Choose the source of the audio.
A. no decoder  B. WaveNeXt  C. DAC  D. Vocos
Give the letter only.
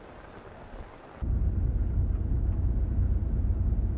A